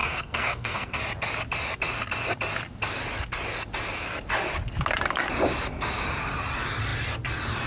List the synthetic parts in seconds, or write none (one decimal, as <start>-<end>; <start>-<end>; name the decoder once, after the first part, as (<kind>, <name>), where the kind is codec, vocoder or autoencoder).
0.0-1.0 (codec, SNAC)